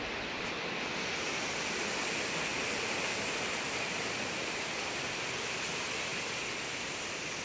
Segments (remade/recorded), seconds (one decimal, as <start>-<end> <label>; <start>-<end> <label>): 0.0-7.4 recorded